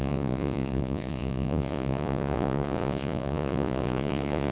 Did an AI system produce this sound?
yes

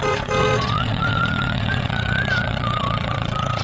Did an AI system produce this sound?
yes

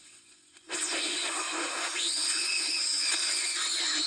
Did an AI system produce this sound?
yes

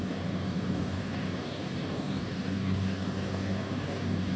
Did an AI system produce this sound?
yes